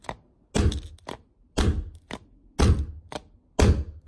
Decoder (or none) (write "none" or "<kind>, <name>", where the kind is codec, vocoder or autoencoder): none